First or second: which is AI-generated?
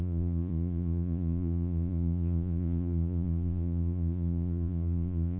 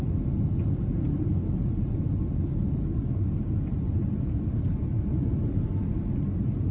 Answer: first